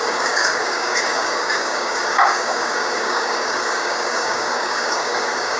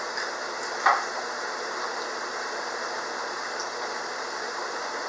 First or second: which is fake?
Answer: first